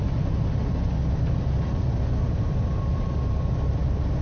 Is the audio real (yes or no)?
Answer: yes